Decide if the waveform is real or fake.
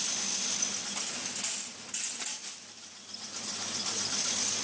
real